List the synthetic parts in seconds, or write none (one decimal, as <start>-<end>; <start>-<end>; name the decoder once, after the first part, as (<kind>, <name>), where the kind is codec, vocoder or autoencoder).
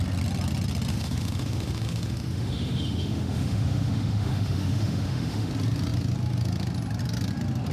0.9-5.5 (autoencoder, DAC-VAE)